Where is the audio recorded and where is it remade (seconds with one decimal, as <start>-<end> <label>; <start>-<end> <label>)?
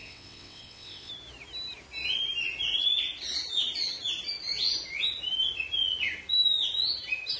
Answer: 0.0-1.1 remade; 1.1-7.4 recorded